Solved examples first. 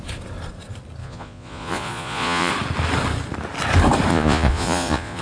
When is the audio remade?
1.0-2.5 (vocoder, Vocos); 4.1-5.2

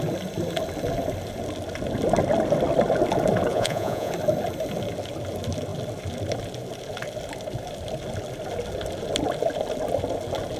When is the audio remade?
3.5-4.1 (vocoder, Vocos)

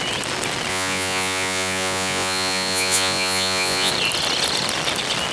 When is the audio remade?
0.7-3.9 (vocoder, Vocos)

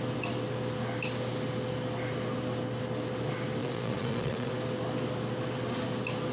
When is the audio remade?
3.6-4.5 (vocoder, Vocos)

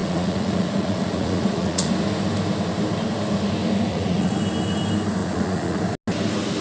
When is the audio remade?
0.0-1.9 (vocoder, Vocos); 3.9-4.4; 5.2-5.8

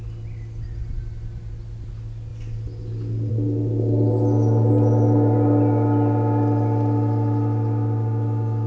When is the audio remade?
none

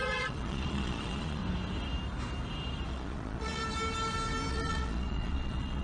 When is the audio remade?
0.0-1.4 (vocoder, Vocos); 2.9-3.6; 4.5-5.8

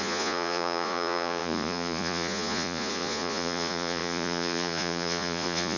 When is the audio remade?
0.0-5.8 (vocoder, Vocos)